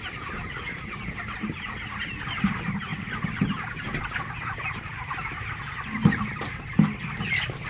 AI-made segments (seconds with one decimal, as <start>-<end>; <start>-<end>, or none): none